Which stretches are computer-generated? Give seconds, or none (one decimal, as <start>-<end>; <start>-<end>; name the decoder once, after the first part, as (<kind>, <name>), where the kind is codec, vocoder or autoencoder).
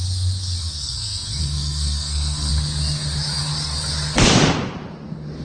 0.6-2.5 (codec, SNAC)